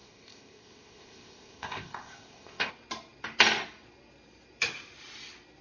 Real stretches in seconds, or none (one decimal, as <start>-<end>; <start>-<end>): 2.7-5.6